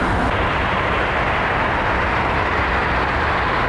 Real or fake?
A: real